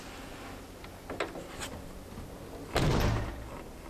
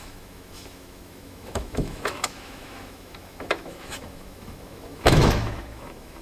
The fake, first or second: second